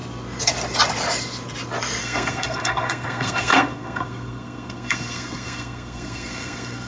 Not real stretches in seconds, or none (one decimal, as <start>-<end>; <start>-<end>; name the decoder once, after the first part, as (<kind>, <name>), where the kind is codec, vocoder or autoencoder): 2.0-6.9 (codec, SNAC)